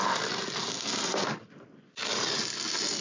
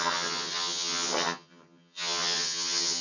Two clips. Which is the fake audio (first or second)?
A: second